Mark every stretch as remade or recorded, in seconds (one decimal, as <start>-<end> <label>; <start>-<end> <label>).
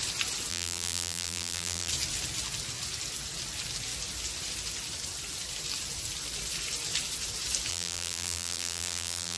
0.0-0.5 recorded; 0.5-1.9 remade; 1.9-7.7 recorded; 7.7-9.4 remade